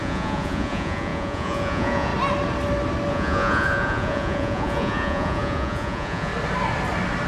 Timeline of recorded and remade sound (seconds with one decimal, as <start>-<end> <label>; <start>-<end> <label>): 0.0-2.1 remade; 2.1-3.1 recorded; 3.1-6.3 remade; 6.3-7.3 recorded